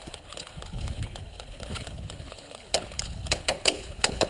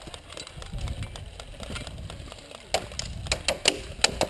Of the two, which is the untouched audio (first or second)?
second